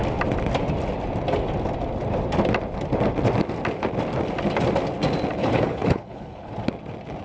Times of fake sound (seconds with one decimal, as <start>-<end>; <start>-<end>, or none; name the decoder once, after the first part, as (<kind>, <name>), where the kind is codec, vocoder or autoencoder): 5.4-6.5 (codec, HILCodec)